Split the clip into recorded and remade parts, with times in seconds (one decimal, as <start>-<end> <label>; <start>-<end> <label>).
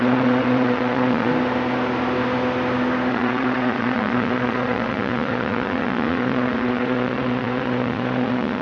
0.0-1.3 remade; 1.3-3.1 recorded; 3.1-8.6 remade